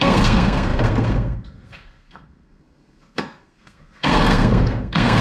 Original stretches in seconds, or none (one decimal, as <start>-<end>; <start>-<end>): none